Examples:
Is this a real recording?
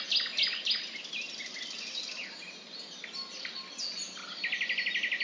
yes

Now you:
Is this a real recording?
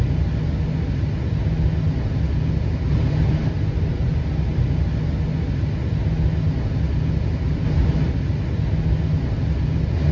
yes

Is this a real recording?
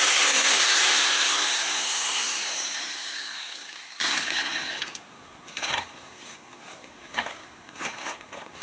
no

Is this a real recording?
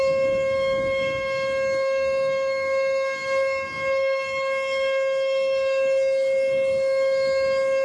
no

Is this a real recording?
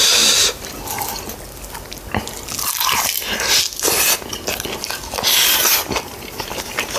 yes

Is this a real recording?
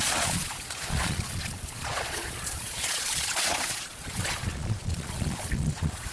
no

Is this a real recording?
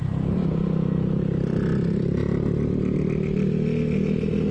yes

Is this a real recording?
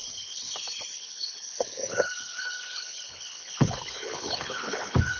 no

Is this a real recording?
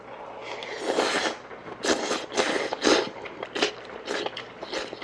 yes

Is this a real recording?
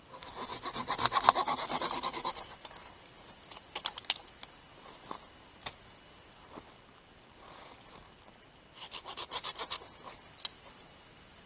yes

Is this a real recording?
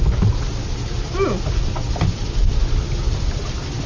yes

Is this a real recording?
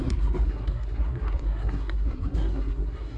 no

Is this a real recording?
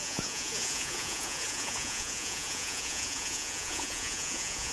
no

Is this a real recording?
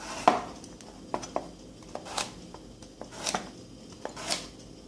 yes